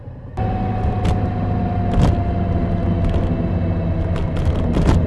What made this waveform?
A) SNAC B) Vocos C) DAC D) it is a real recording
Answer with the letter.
D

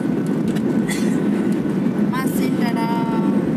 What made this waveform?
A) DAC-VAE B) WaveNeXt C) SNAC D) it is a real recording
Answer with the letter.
D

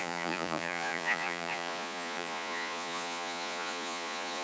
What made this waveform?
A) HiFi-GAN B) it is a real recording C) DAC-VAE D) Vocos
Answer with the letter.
D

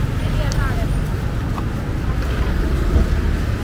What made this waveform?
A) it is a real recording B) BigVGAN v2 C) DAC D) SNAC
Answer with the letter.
A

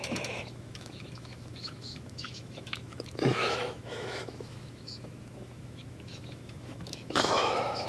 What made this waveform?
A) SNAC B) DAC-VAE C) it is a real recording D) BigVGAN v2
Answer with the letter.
B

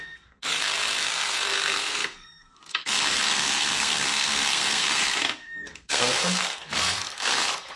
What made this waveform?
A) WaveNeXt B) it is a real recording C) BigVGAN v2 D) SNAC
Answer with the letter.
D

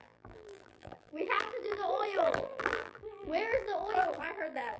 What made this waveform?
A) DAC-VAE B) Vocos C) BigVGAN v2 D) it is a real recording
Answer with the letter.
C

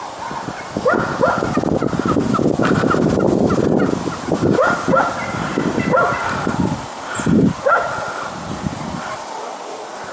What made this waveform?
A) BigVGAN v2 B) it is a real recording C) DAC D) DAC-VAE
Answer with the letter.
B